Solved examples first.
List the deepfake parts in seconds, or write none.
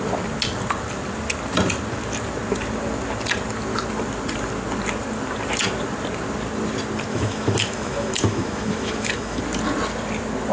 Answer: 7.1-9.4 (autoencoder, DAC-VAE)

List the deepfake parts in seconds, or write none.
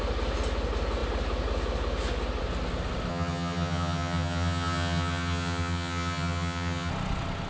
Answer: 3.1-6.9 (vocoder, HiFi-GAN)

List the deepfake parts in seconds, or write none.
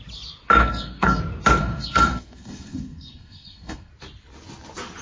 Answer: 0.6-1.2 (codec, SNAC); 1.6-3.9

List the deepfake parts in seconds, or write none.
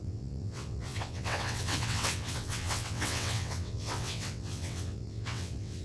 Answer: 0.0-5.8 (vocoder, WaveNeXt)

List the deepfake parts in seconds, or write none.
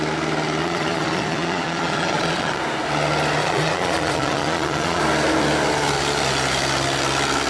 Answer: 0.6-2.6 (vocoder, Vocos); 3.4-5.0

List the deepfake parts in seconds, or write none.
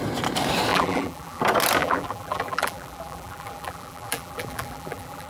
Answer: 0.7-1.4 (vocoder, BigVGAN v2); 1.8-5.3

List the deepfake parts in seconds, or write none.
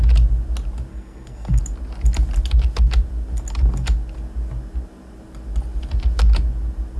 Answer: 0.9-1.6 (codec, SNAC)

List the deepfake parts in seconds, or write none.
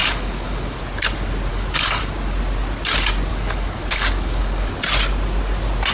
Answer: 0.0-0.8 (codec, DAC); 1.5-2.0; 3.3-4.7